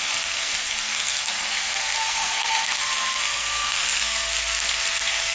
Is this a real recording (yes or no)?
no